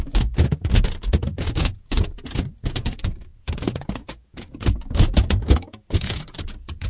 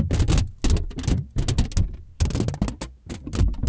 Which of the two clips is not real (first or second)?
first